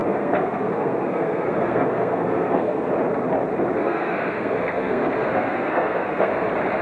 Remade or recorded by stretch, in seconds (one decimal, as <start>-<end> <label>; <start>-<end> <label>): 0.0-2.9 remade; 2.9-3.7 recorded; 3.7-6.3 remade; 6.3-6.8 recorded